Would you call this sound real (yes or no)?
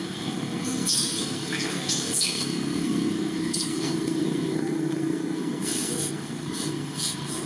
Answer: no